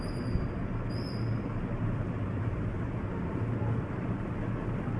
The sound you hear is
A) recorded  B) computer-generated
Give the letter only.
A